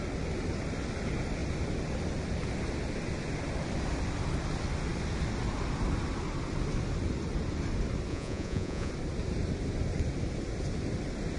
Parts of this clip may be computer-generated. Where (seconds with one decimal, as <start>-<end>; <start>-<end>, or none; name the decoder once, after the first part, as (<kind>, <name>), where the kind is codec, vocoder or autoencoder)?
8.1-8.9 (vocoder, Vocos)